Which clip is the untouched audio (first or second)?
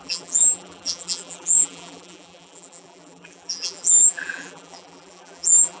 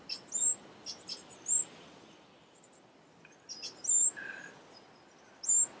second